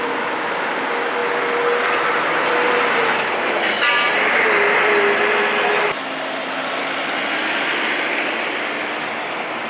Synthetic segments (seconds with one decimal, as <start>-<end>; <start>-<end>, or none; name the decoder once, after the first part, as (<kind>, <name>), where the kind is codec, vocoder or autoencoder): none